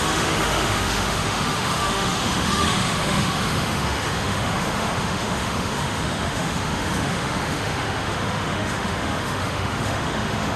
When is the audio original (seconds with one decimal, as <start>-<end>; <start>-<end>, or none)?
none

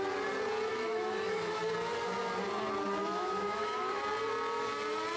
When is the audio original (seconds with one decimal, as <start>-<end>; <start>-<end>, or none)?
0.0-0.7; 1.6-3.0; 4.0-5.2

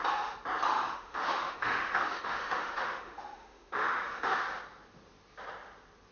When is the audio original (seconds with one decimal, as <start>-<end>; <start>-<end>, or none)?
0.0-0.7; 4.4-6.1

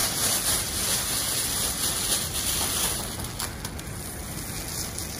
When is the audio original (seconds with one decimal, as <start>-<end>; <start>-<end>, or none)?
0.0-5.2

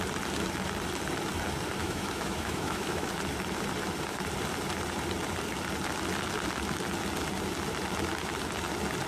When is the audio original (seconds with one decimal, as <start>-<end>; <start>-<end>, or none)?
0.0-1.8; 3.1-9.1

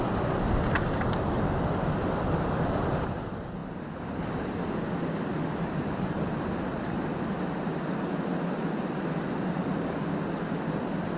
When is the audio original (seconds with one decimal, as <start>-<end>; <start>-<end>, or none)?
0.0-11.2